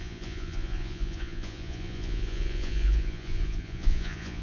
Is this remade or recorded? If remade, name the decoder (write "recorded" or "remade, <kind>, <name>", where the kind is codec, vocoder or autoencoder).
remade, vocoder, Vocos